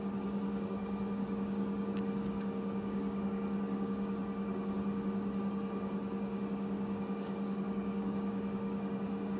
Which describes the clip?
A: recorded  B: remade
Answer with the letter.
B